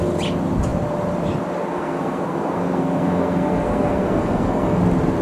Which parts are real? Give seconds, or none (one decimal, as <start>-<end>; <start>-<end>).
0.0-1.7; 4.8-5.2